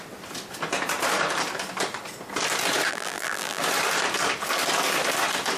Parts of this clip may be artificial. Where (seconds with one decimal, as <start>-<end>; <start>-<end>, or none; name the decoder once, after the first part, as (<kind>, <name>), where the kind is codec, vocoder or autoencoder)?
2.9-3.6 (vocoder, BigVGAN v2)